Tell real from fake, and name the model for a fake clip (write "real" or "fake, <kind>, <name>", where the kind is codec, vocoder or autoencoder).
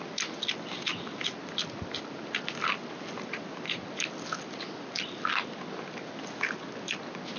real